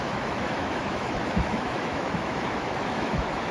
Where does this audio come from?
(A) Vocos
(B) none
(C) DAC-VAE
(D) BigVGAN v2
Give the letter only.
C